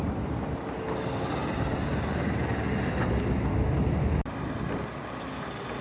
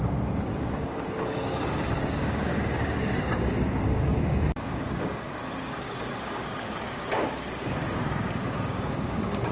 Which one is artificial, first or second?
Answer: second